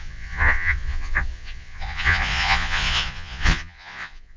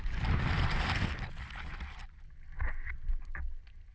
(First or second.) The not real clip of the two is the first